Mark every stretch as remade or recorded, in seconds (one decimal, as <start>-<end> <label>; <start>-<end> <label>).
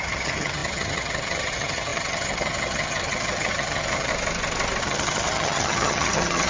0.0-4.1 remade; 4.1-4.8 recorded; 4.8-6.5 remade